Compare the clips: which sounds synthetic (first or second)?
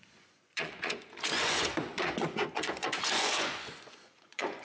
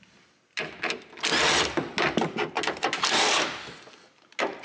first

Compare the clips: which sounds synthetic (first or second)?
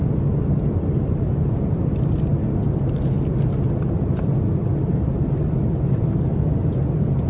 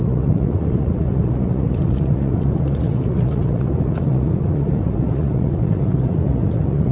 second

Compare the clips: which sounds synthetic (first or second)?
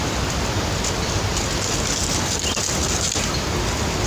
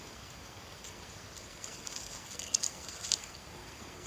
second